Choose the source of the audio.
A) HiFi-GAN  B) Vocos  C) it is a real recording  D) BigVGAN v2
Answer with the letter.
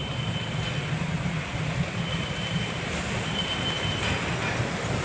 C